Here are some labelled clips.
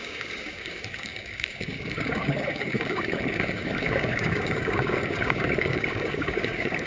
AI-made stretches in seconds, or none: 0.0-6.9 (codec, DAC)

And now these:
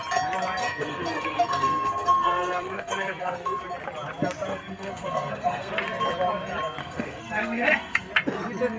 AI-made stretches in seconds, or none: 0.6-3.6 (codec, SNAC); 4.5-5.7; 6.8-8.1

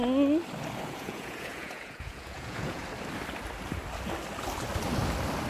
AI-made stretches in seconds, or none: 0.8-2.8 (vocoder, Vocos)

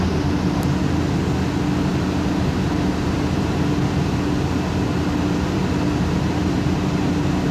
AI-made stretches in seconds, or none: none

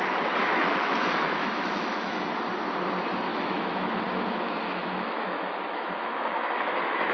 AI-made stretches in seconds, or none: 0.5-2.4 (autoencoder, DAC-VAE); 3.3-7.1